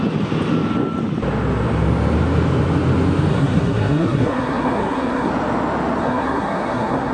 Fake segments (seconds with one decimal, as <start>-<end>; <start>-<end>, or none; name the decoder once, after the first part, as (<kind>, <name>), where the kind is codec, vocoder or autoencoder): 3.3-5.3 (codec, SNAC); 6.0-7.1